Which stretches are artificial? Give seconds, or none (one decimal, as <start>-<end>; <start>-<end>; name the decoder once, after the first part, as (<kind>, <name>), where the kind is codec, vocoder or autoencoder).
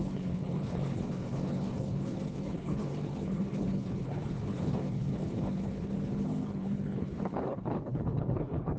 0.0-8.8 (codec, HILCodec)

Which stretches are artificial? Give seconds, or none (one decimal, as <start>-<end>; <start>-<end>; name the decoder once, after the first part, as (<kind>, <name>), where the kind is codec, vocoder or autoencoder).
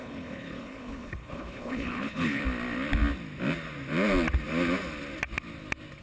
0.0-2.4 (codec, HILCodec)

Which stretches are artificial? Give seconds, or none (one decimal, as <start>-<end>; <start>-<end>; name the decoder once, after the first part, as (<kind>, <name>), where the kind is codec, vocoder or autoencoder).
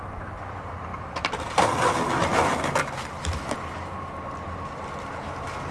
none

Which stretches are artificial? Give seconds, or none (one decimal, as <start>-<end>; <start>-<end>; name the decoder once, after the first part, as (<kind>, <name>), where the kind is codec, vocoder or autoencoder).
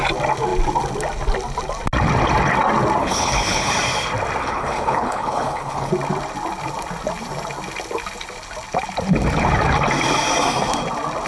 3.0-3.7 (codec, HILCodec); 4.4-5.9